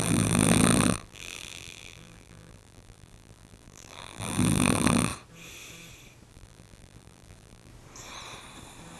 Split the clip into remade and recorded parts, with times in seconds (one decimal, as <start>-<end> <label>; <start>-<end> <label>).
0.0-5.1 remade; 5.1-6.3 recorded; 6.3-7.7 remade; 7.7-9.0 recorded